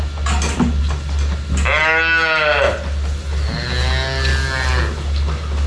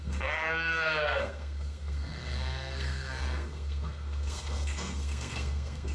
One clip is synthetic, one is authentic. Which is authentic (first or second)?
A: first